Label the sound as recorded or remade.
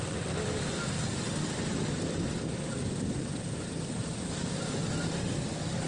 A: remade